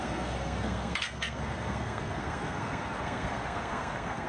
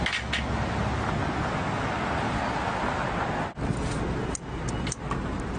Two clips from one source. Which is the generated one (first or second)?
first